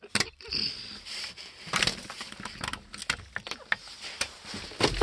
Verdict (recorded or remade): recorded